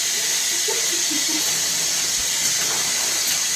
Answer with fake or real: real